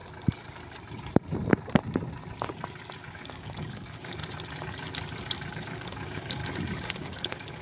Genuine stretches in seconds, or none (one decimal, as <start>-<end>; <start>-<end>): 0.0-3.1; 4.2-5.5; 6.4-7.0